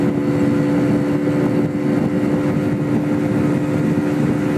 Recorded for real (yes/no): yes